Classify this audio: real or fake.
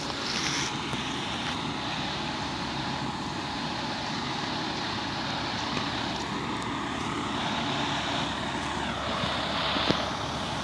real